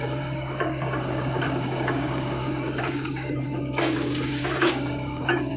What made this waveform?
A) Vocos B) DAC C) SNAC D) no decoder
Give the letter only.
B